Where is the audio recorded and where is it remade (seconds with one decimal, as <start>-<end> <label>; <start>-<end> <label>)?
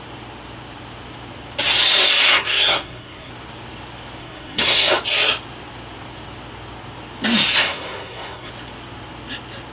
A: 0.0-2.3 recorded; 2.3-3.3 remade; 3.3-4.2 recorded; 4.2-4.9 remade; 4.9-7.6 recorded; 7.6-8.5 remade; 8.5-9.7 recorded